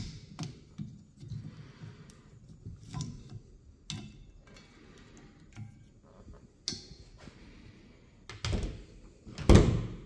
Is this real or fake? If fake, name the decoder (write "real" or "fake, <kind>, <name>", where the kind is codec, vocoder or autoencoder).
real